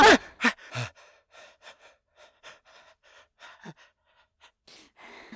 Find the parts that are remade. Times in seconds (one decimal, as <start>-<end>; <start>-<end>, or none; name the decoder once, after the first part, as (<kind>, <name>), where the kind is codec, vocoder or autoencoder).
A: none

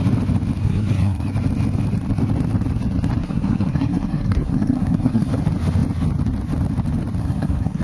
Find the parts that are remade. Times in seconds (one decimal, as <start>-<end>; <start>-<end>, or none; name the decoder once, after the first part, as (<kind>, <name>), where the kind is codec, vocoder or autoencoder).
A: 0.6-1.3 (codec, SNAC); 3.2-5.3; 7.2-7.8